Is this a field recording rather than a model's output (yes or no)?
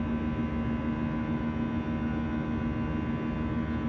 yes